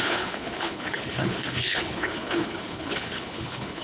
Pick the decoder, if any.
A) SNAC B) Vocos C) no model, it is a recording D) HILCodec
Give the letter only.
D